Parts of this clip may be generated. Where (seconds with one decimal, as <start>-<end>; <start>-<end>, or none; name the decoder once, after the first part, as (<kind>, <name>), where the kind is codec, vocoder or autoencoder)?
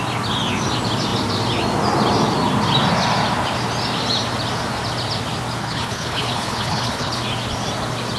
5.6-7.2 (codec, HILCodec)